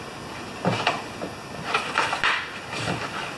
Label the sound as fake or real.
real